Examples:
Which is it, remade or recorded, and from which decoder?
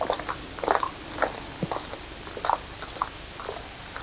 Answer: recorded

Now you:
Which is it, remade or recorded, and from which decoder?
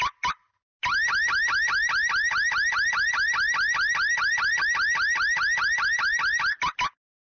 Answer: recorded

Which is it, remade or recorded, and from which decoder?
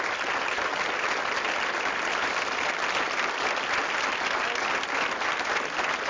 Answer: recorded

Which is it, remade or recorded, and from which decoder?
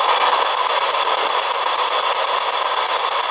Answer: recorded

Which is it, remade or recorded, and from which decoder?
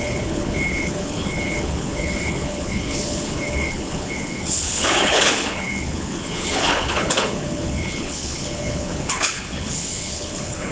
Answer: remade, codec, HILCodec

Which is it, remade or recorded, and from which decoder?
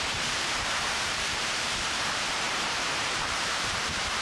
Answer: remade, vocoder, BigVGAN v2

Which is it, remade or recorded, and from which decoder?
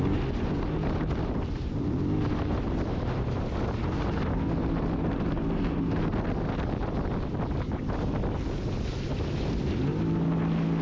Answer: recorded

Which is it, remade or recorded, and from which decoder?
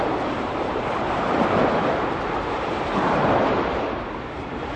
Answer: remade, vocoder, BigVGAN v2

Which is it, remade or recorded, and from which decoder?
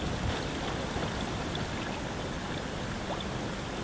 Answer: recorded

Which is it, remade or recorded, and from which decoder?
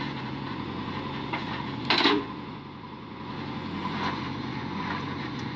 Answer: remade, vocoder, Vocos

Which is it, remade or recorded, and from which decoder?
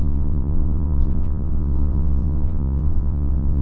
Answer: remade, vocoder, WaveNeXt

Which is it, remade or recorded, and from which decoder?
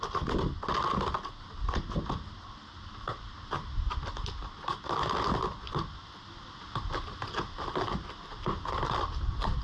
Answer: recorded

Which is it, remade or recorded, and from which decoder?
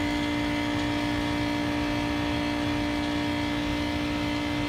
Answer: recorded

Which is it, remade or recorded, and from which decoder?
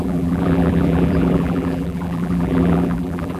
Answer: remade, vocoder, BigVGAN v2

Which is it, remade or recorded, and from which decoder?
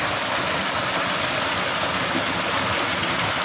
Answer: recorded